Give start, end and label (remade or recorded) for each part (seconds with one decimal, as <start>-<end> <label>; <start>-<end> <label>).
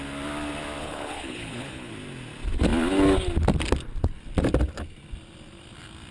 0.0-0.8 recorded; 0.8-1.9 remade; 1.9-6.1 recorded